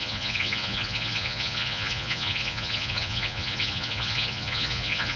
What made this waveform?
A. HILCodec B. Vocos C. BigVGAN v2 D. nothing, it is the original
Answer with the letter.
B